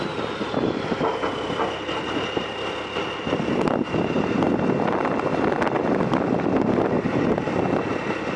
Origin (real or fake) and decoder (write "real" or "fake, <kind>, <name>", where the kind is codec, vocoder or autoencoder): real